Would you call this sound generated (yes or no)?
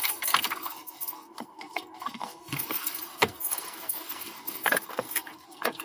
yes